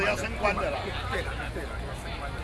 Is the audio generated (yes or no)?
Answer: no